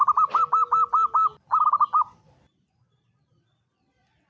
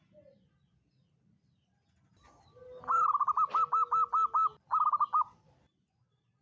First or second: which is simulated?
first